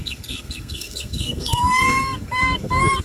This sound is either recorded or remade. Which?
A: remade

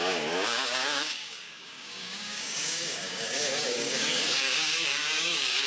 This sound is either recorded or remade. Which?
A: remade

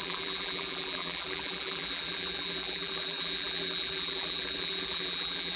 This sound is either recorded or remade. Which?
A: remade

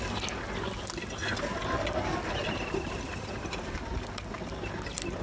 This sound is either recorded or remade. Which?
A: recorded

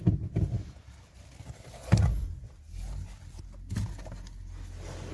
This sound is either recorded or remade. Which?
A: recorded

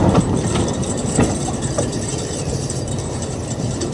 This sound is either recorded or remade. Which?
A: remade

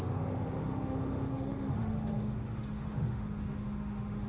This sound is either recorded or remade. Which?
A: remade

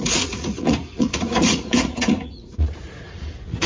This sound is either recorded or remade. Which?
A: remade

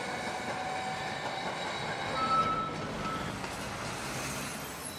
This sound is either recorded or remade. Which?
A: recorded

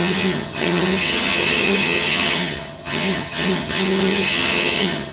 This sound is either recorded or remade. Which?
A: remade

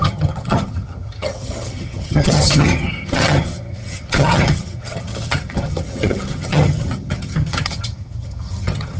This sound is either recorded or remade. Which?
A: remade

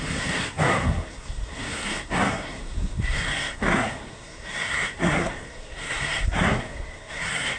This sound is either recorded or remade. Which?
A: remade